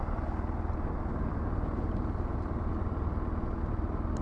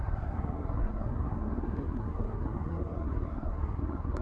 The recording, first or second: first